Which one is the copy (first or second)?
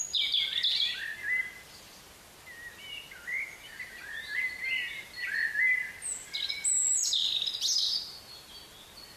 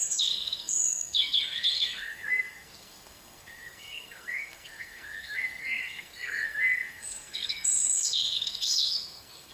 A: second